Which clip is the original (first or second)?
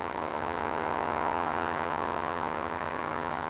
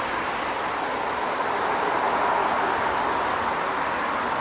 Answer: second